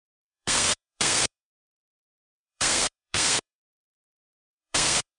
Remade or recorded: remade